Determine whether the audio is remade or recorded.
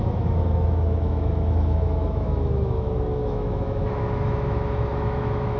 remade